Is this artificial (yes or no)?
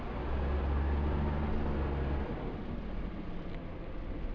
no